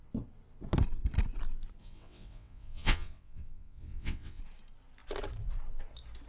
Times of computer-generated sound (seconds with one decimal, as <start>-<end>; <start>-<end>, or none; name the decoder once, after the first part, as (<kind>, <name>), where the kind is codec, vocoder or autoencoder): 1.8-4.4 (vocoder, WaveNeXt)